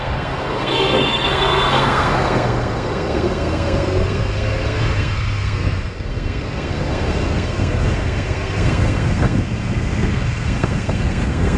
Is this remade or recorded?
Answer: remade